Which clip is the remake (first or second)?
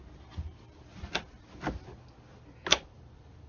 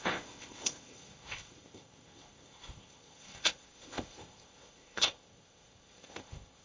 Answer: second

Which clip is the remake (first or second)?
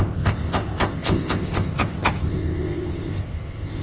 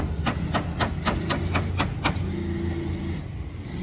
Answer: first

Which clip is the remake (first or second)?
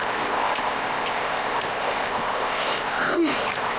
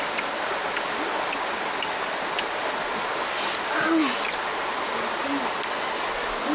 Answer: first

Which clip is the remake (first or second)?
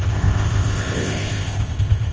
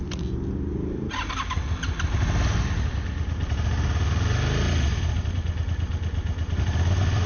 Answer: first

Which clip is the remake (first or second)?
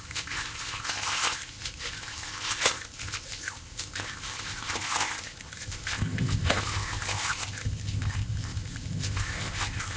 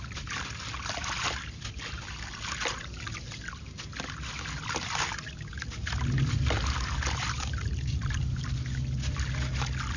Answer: first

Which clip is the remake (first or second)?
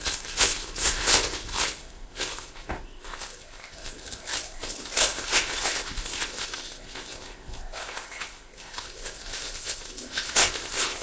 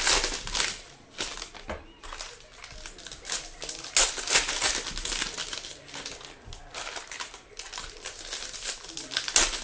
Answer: first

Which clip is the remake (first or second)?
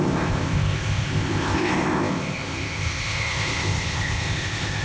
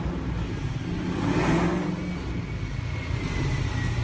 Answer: first